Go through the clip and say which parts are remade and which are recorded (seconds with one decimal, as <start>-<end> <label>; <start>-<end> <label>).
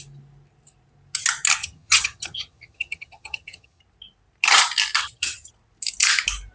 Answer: 0.0-1.6 recorded; 1.6-3.8 remade; 3.8-5.0 recorded; 5.0-5.5 remade; 5.5-6.5 recorded